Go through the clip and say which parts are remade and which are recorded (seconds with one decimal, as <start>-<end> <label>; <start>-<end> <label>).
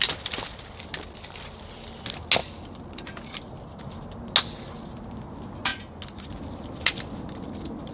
0.0-7.9 recorded